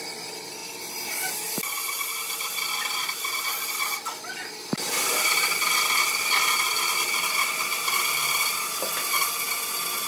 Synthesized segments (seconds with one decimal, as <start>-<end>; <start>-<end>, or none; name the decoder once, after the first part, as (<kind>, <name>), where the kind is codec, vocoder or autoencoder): none